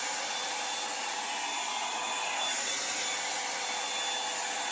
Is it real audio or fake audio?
real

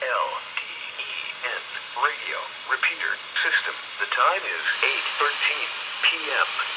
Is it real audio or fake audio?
real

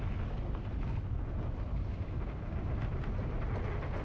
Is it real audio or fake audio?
real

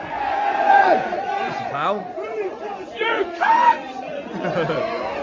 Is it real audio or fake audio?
fake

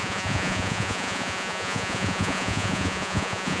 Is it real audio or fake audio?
fake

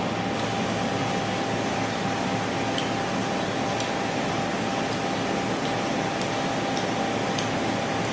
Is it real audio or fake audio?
real